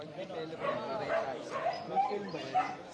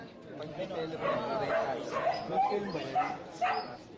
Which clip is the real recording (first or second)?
second